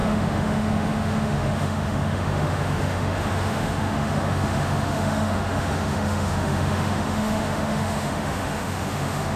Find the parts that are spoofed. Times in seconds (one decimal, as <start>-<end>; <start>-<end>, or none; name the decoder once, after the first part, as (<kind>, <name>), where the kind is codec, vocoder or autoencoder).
0.0-9.4 (autoencoder, DAC-VAE)